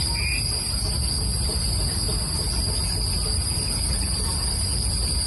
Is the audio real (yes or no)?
yes